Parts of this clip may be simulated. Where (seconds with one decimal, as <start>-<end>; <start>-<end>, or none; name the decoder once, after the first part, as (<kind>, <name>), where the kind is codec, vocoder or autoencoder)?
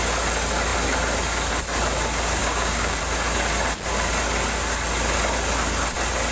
2.4-3.0 (codec, DAC)